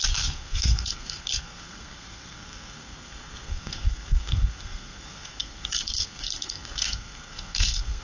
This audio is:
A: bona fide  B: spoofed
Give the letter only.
B